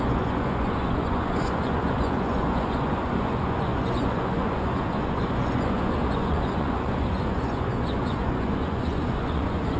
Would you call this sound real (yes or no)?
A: no